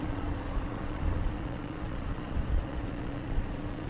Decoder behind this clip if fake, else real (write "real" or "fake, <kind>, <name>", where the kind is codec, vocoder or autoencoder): fake, vocoder, Vocos